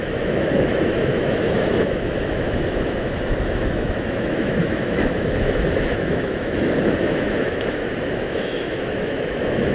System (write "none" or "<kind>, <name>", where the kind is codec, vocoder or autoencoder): autoencoder, DAC-VAE